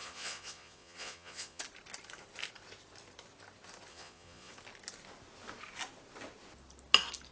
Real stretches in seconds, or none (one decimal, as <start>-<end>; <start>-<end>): 1.6-3.9; 4.5-7.3